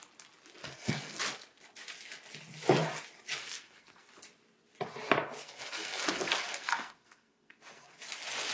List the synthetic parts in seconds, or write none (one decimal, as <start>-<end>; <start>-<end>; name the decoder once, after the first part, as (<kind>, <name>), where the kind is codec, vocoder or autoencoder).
0.6-1.2 (codec, SNAC); 3.4-4.1; 5.4-8.0